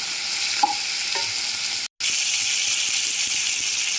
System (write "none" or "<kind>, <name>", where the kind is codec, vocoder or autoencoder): none